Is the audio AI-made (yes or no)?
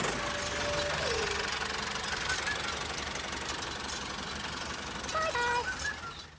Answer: no